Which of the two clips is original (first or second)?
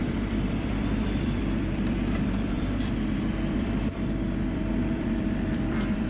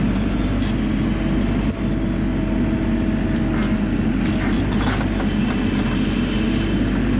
second